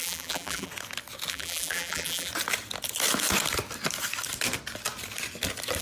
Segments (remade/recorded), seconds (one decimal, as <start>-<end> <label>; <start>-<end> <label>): 0.0-0.7 remade; 0.7-1.3 recorded; 1.3-2.3 remade; 2.3-5.8 recorded